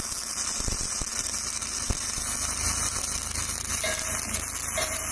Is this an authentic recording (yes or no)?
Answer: yes